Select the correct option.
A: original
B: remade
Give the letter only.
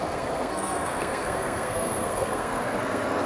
B